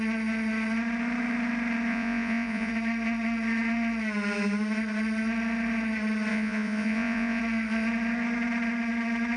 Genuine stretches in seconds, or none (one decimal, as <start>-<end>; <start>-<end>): 0.0-1.9; 2.7-6.3; 7.4-9.4